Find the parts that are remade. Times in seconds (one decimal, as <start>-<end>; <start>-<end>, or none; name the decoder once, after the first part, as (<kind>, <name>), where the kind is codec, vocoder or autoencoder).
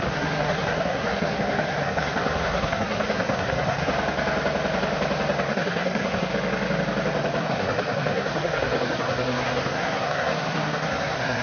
0.0-3.9 (codec, SNAC); 5.5-6.3; 7.4-11.4